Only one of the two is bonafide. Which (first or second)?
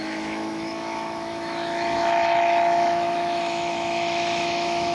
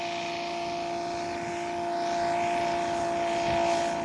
second